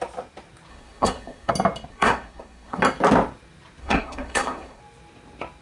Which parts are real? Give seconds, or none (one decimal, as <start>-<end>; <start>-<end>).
0.0-0.7; 1.5-1.9; 2.8-3.8; 4.8-5.6